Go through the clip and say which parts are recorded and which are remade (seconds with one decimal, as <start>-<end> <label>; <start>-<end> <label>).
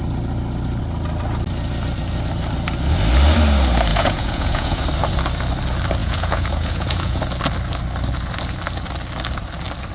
0.0-3.9 recorded; 3.9-4.8 remade; 4.8-6.0 recorded; 6.0-7.2 remade; 7.2-9.9 recorded